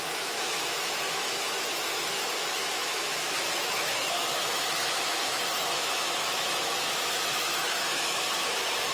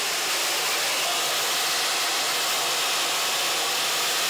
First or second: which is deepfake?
first